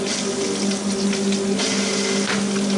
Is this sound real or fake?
real